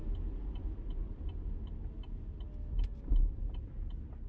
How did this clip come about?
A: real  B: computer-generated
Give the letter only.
A